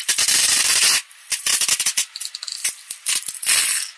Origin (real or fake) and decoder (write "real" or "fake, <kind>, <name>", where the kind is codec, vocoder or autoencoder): real